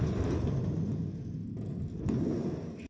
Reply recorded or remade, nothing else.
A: recorded